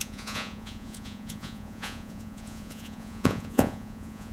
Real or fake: fake